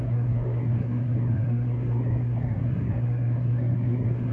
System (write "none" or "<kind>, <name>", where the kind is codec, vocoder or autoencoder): codec, SNAC